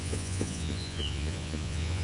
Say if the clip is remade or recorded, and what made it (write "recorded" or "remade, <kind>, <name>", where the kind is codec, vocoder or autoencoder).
remade, vocoder, Vocos